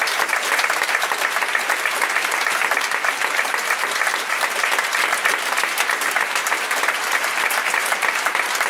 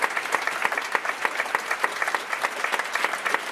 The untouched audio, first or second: second